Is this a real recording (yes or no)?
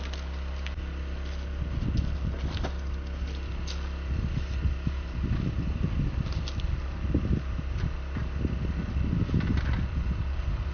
yes